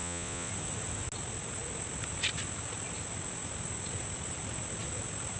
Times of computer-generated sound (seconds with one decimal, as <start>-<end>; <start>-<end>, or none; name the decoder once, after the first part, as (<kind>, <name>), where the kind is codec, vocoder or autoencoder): 0.0-0.5 (vocoder, Vocos)